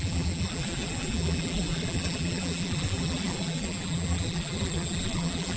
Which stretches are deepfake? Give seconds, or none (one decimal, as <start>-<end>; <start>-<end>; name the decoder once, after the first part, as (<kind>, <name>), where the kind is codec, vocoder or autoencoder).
0.0-5.6 (vocoder, BigVGAN v2)